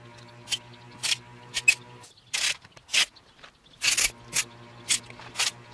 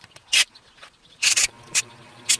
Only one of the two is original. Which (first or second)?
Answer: first